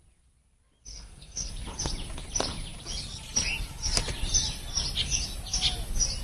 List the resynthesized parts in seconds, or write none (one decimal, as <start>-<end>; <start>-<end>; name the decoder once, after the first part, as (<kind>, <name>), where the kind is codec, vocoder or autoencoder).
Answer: 0.9-1.5 (codec, SNAC)